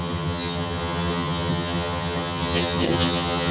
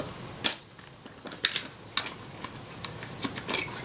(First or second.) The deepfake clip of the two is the first